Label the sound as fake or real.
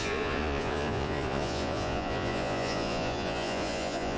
fake